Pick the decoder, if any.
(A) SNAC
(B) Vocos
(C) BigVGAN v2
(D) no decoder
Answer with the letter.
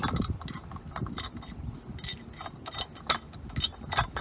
D